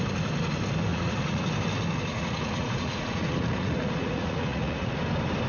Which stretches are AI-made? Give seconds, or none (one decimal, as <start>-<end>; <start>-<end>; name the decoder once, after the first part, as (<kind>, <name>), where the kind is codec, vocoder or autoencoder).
0.9-1.4 (vocoder, Vocos); 2.1-5.0